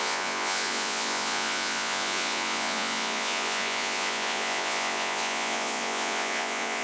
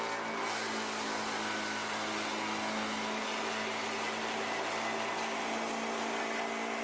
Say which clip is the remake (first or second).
first